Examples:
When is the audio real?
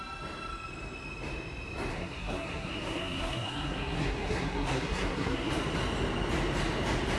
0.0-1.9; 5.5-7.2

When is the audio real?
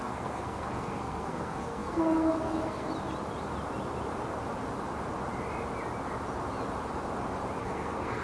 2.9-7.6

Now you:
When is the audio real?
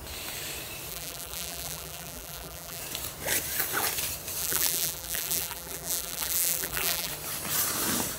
0.0-0.9; 2.8-4.4; 7.1-8.2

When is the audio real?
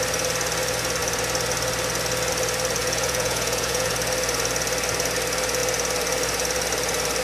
0.0-2.8; 3.9-7.2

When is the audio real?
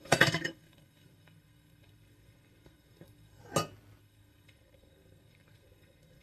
3.4-4.0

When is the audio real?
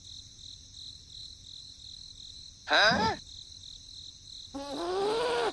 0.0-5.5